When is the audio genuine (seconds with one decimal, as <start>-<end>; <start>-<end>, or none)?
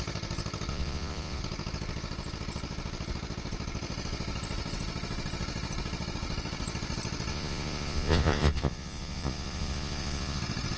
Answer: 0.0-0.7; 1.4-7.3; 10.4-10.8